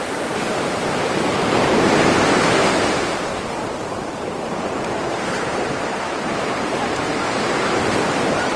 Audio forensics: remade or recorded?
remade